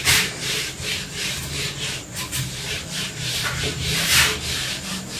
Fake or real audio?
fake